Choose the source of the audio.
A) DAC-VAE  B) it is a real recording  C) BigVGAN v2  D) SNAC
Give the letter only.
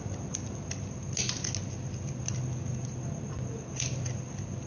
B